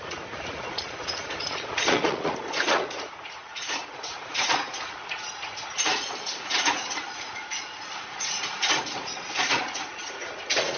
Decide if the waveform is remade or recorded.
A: remade